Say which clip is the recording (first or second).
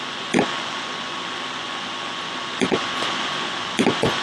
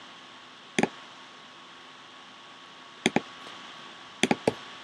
second